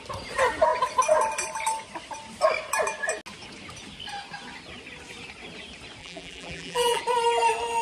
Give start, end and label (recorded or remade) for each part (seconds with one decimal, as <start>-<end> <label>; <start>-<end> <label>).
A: 0.0-6.0 recorded; 6.0-7.0 remade; 7.0-7.8 recorded